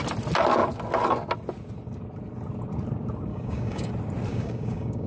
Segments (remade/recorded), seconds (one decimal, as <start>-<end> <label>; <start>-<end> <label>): 0.0-3.3 recorded; 3.3-3.9 remade; 3.9-4.3 recorded; 4.3-5.1 remade